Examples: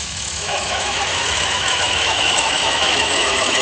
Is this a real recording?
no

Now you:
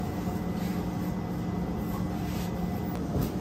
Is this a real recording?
yes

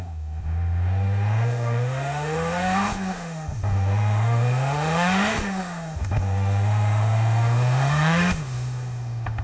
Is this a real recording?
no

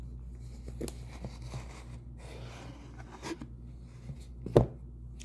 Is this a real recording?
yes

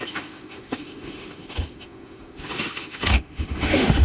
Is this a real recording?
no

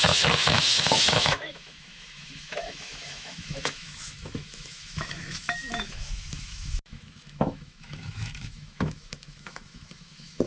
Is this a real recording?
no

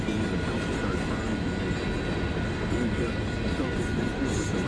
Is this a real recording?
yes